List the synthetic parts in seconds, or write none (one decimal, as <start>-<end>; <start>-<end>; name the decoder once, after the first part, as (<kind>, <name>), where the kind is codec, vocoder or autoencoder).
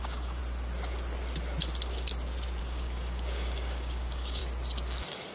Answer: 0.0-0.4 (codec, DAC); 2.6-4.4